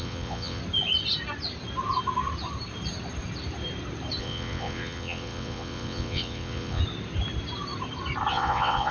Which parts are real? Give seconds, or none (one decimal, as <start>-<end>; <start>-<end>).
0.6-4.2; 6.8-8.3